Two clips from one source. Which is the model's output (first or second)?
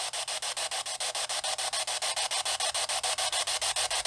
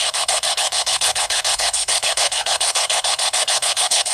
second